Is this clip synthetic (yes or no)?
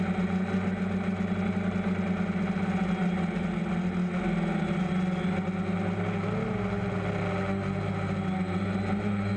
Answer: no